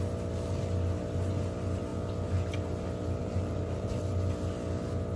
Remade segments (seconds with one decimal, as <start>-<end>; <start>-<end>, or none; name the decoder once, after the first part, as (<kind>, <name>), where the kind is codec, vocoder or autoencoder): 3.2-4.0 (vocoder, BigVGAN v2)